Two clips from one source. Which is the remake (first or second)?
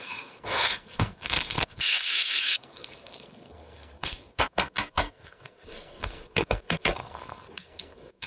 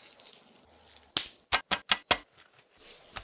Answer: first